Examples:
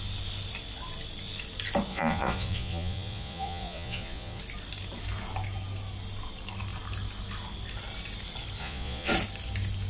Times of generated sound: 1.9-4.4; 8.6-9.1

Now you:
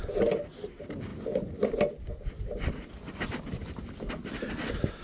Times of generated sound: none

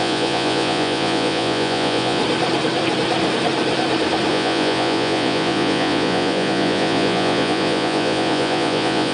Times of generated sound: 0.0-2.2; 4.3-9.1

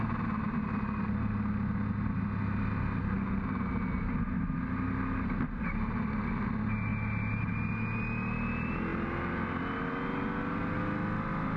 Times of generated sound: none

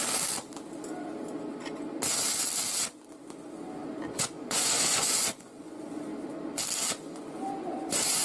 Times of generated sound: 4.1-6.1; 7.0-8.2

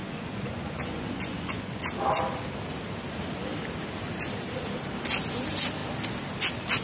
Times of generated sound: 0.0-1.8

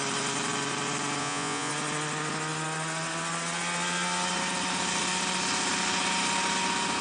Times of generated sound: 1.2-1.7